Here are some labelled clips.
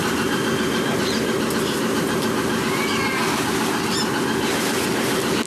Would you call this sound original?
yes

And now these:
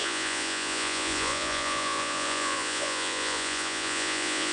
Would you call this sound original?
no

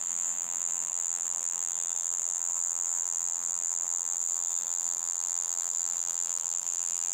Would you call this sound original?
no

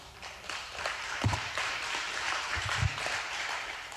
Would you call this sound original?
no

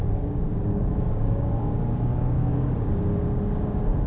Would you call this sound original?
no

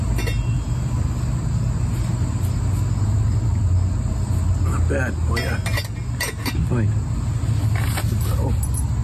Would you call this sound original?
yes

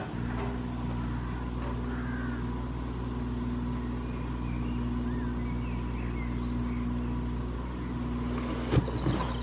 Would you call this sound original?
yes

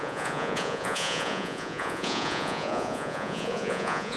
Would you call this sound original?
no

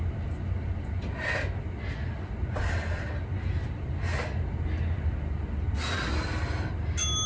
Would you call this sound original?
yes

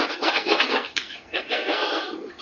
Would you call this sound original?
no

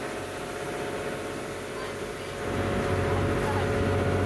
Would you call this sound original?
yes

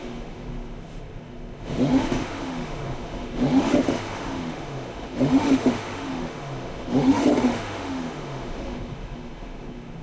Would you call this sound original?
no